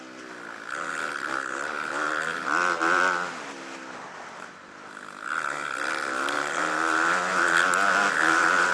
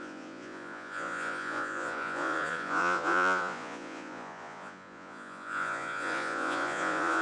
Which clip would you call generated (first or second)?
second